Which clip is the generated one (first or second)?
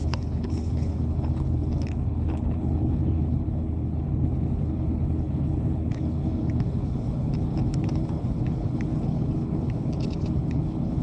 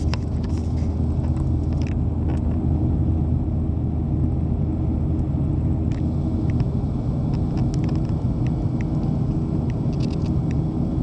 first